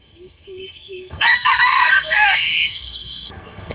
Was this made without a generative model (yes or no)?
no